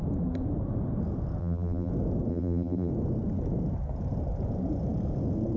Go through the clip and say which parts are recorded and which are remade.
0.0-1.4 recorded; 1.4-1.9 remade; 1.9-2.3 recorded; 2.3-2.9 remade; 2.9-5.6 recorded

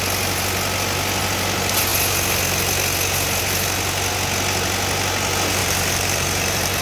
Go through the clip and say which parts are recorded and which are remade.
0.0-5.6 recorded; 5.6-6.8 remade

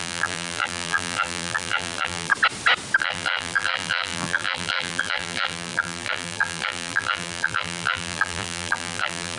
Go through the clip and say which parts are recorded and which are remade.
0.0-2.3 remade; 2.3-3.0 recorded; 3.0-9.4 remade